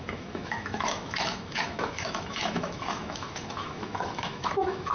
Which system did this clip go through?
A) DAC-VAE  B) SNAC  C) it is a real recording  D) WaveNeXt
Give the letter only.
A